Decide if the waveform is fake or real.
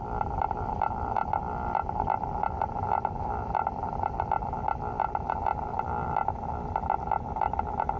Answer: real